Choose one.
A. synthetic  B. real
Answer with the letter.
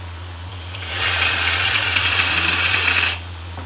A